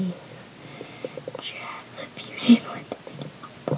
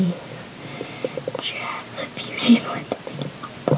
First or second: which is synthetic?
second